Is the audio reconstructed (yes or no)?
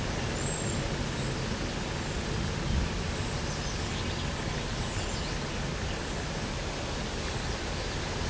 no